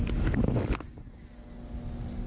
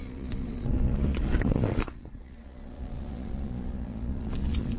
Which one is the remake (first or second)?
second